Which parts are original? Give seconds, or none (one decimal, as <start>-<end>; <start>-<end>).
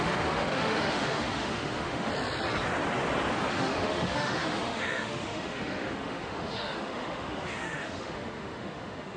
2.1-3.5